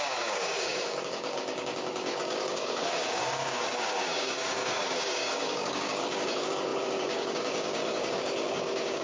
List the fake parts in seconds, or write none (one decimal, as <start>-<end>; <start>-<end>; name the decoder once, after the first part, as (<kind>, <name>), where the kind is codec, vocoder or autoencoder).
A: 0.0-9.0 (codec, DAC)